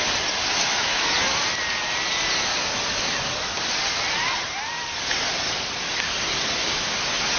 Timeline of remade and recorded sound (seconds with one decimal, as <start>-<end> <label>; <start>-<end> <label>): 0.0-0.4 recorded; 0.4-1.1 remade; 1.1-7.4 recorded